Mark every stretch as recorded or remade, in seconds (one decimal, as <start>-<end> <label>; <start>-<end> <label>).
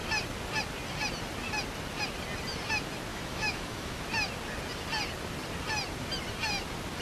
0.0-3.1 recorded; 3.1-4.0 remade; 4.0-7.0 recorded